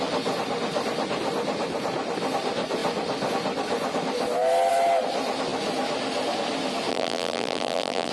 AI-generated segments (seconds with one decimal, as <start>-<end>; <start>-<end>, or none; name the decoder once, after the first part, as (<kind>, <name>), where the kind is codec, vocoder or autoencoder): 6.9-8.1 (vocoder, BigVGAN v2)